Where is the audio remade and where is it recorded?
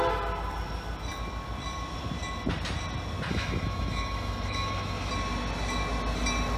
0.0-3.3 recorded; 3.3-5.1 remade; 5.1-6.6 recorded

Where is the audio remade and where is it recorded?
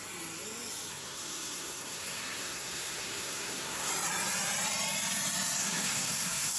0.0-0.9 recorded; 0.9-3.9 remade; 3.9-5.6 recorded; 5.6-6.6 remade